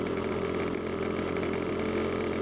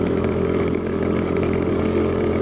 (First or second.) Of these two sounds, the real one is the first